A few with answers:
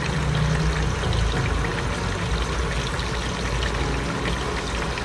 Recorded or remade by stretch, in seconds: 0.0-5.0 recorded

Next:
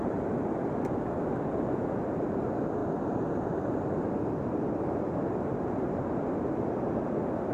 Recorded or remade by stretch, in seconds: 0.0-2.8 recorded; 2.8-4.0 remade; 4.0-7.5 recorded

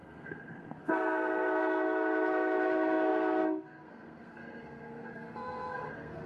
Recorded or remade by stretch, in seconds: 0.0-6.3 remade